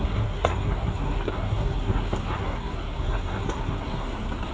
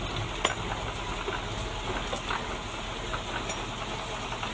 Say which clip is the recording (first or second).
second